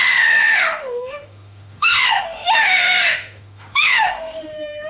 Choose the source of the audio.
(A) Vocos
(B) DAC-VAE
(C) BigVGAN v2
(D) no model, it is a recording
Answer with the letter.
B